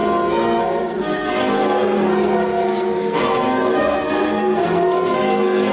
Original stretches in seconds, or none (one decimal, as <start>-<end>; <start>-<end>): 0.0-0.6